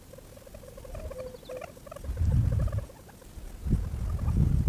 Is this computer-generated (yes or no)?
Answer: no